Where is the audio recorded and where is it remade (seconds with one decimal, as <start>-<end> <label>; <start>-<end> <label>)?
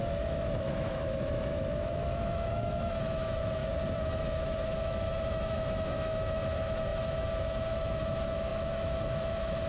0.0-3.6 remade; 3.6-4.1 recorded; 4.1-9.7 remade